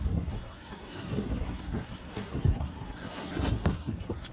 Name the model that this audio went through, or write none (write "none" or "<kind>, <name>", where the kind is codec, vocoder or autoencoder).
codec, SNAC